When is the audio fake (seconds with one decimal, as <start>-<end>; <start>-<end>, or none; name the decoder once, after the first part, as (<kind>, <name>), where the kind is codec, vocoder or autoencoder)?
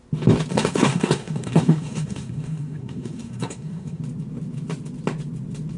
0.5-4.0 (codec, SNAC)